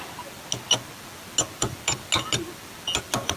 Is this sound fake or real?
real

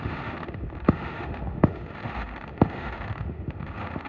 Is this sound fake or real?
fake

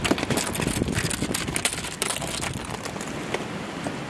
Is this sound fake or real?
real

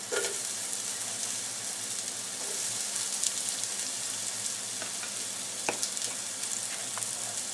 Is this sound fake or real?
real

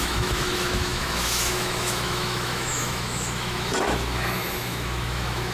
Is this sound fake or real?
fake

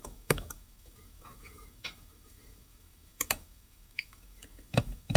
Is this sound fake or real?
fake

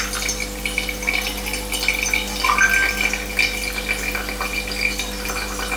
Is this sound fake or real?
real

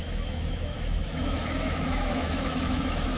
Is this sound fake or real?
fake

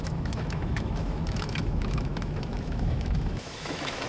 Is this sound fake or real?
fake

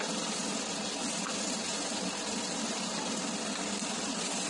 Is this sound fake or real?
real